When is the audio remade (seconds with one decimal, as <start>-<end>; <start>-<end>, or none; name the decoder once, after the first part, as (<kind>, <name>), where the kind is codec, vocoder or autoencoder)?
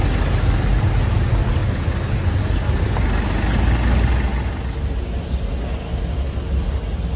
none